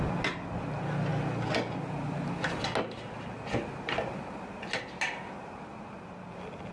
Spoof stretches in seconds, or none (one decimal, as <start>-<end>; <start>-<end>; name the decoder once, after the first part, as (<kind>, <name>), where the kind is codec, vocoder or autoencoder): none